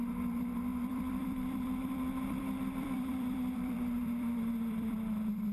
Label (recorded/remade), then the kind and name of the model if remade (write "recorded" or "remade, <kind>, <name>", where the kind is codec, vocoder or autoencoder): remade, vocoder, BigVGAN v2